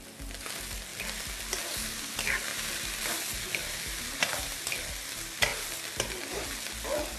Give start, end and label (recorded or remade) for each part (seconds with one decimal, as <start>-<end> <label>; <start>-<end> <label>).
0.0-2.5 recorded; 2.5-3.0 remade; 3.0-3.6 recorded; 3.6-4.6 remade; 4.6-7.2 recorded